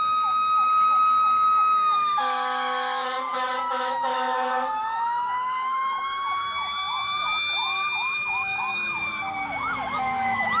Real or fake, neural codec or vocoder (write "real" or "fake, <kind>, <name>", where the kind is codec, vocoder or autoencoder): fake, autoencoder, DAC-VAE